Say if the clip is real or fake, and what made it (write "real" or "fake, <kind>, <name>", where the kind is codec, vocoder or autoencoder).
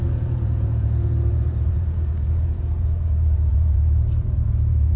fake, vocoder, Vocos